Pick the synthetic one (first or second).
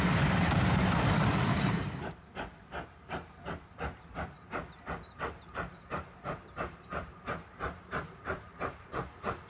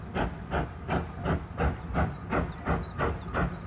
first